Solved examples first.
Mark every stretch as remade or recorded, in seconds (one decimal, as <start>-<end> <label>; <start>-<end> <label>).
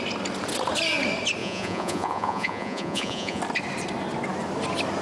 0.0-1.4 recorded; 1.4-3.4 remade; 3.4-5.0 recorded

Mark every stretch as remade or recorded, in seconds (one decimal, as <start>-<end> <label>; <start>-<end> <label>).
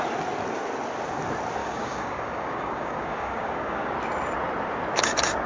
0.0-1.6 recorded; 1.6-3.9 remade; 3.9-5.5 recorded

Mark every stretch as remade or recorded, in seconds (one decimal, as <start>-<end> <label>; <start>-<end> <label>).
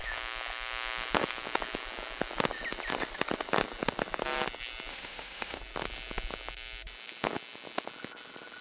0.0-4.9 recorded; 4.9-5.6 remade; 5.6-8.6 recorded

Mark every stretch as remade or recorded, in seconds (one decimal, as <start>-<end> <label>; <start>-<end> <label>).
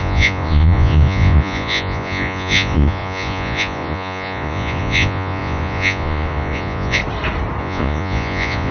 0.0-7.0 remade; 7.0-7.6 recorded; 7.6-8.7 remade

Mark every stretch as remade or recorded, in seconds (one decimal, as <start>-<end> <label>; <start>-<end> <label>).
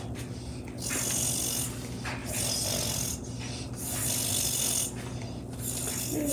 0.0-6.3 recorded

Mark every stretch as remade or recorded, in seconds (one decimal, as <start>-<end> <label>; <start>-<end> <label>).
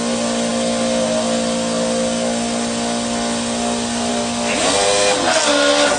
0.0-6.0 recorded